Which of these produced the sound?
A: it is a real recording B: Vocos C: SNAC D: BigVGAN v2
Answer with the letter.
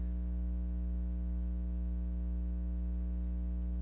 A